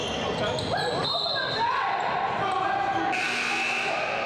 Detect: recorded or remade recorded